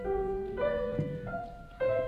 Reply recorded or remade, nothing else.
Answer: remade